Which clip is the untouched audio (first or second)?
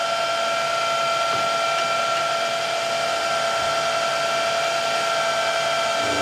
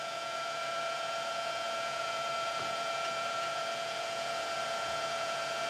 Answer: first